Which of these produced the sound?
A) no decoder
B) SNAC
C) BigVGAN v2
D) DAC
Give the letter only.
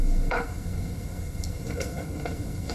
B